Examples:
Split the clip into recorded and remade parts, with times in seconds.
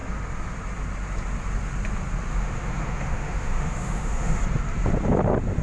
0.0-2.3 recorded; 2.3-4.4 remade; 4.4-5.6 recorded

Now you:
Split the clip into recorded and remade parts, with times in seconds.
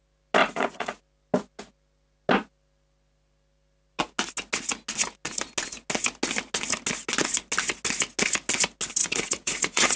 0.0-0.4 recorded; 0.4-1.0 remade; 1.0-9.0 recorded; 9.0-10.0 remade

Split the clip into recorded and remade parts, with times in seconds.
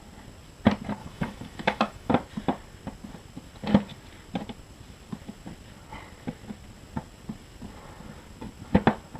0.0-1.0 recorded; 1.0-2.1 remade; 2.1-9.2 recorded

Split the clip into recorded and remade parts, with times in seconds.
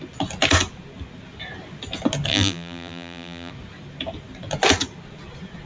0.0-2.3 recorded; 2.3-3.5 remade; 3.5-5.7 recorded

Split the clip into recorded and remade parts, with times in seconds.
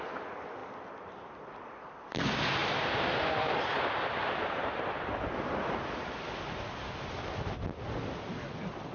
0.0-2.6 recorded; 2.6-5.1 remade; 5.1-8.9 recorded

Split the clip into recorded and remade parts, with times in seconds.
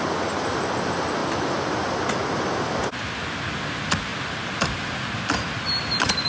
0.0-6.3 recorded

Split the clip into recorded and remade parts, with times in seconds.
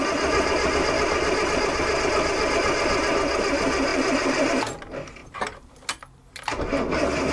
0.0-3.9 recorded; 3.9-4.5 remade; 4.5-5.2 recorded; 5.2-5.7 remade; 5.7-7.3 recorded